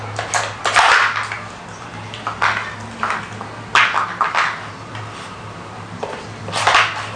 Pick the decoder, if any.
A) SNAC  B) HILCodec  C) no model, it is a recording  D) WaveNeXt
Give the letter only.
C